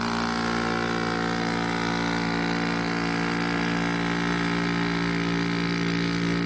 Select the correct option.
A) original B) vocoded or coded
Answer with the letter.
A